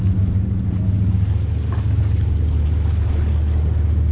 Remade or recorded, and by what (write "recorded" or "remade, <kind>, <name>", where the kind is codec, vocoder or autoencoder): recorded